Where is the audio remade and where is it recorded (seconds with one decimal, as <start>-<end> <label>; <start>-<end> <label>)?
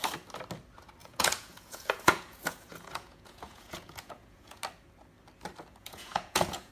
0.0-1.0 recorded; 1.0-4.6 remade; 4.6-5.8 recorded; 5.8-6.7 remade